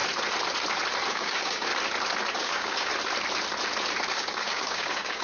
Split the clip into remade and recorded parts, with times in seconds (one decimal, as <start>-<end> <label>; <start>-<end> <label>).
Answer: 0.0-1.1 recorded; 1.1-1.7 remade; 1.7-2.3 recorded; 2.3-2.9 remade; 2.9-4.1 recorded; 4.1-5.2 remade